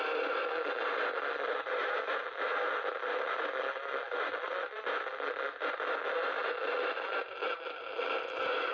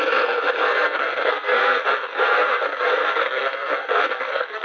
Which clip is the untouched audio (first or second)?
first